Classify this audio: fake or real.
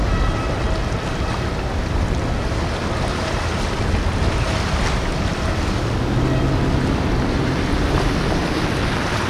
real